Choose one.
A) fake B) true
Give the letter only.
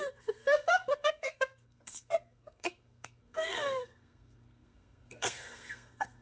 A